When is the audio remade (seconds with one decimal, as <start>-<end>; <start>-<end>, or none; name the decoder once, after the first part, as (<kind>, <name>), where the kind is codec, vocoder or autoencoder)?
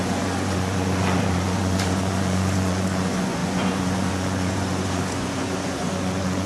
0.0-6.5 (vocoder, Vocos)